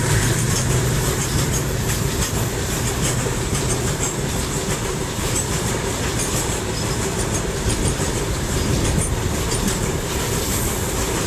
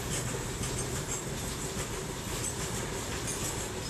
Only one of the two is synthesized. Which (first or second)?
first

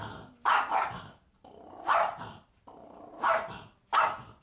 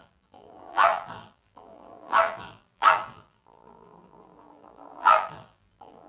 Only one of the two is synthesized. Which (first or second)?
second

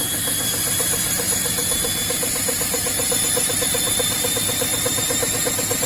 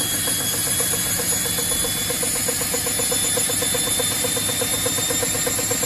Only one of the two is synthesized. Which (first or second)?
first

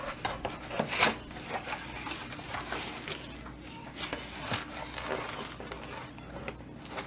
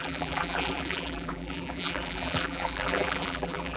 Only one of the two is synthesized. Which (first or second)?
second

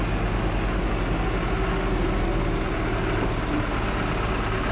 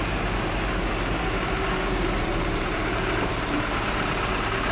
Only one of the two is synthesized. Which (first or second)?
second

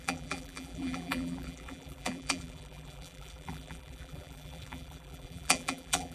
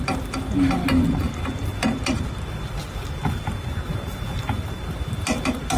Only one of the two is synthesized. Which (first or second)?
first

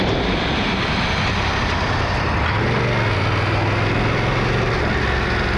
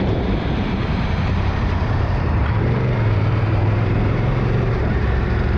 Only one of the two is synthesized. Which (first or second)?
second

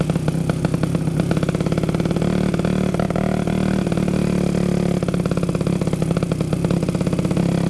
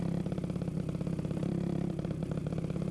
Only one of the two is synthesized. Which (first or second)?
second